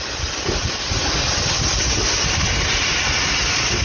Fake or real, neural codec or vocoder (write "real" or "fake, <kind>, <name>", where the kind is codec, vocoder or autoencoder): real